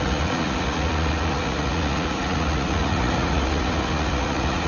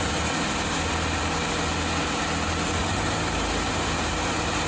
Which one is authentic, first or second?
second